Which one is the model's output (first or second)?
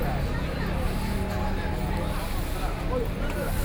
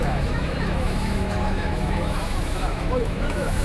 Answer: second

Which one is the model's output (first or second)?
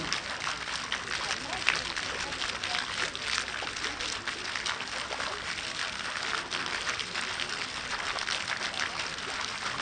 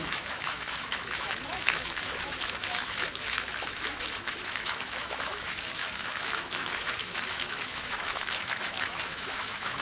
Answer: second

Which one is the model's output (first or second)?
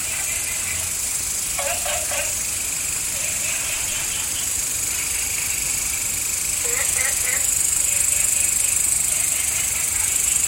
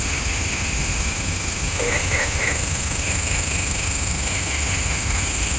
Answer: second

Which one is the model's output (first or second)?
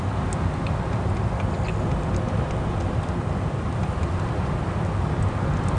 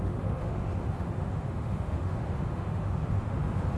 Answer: second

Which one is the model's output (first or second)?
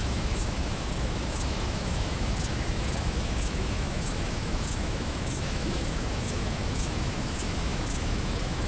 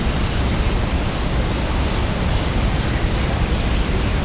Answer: first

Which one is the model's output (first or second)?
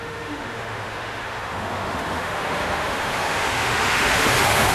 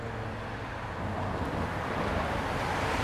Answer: first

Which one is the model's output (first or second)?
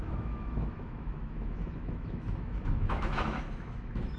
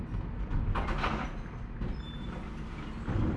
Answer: first